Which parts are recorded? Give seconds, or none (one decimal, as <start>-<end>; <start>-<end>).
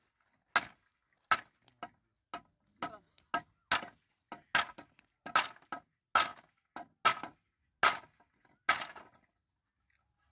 0.0-10.3